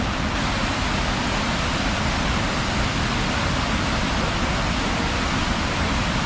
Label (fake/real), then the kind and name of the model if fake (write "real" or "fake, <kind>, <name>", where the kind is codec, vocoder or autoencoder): real